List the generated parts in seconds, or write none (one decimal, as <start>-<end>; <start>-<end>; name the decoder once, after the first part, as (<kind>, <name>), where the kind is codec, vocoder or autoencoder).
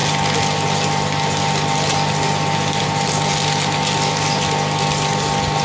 none